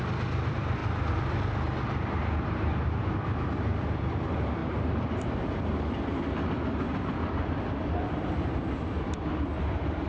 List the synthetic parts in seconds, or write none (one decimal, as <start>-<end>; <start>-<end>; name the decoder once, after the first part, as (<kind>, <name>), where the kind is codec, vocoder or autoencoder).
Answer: 0.0-4.6 (vocoder, BigVGAN v2); 5.2-10.1

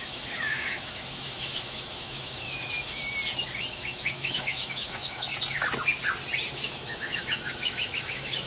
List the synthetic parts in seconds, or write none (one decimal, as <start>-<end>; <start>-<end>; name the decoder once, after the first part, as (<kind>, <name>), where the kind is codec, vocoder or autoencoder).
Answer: 0.0-3.0 (autoencoder, DAC-VAE); 3.7-5.3; 6.5-8.5

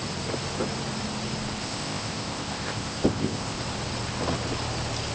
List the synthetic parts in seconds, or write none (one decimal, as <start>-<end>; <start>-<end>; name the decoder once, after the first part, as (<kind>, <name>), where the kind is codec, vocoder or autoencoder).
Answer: 1.6-3.6 (codec, ZipCodec)

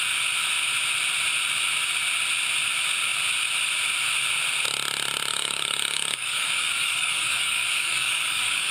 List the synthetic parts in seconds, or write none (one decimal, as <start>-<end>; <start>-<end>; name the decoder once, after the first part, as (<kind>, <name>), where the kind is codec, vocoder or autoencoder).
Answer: 5.3-8.7 (codec, DAC)

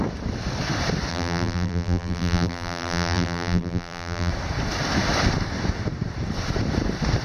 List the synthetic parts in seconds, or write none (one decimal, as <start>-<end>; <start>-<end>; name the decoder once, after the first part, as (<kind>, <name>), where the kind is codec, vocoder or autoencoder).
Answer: 1.1-4.3 (vocoder, BigVGAN v2)

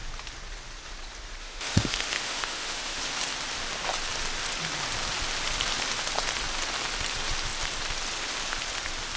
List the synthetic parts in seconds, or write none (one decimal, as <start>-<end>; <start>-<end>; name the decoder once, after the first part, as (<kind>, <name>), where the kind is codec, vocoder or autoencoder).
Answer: 1.4-3.0 (autoencoder, DAC-VAE)